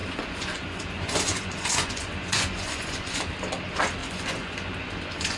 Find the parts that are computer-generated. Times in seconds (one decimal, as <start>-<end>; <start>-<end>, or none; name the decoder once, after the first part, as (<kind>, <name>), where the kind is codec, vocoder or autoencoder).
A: 0.0-3.2 (vocoder, Vocos); 4.0-5.4